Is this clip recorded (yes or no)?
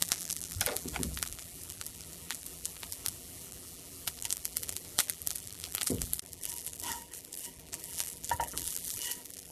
no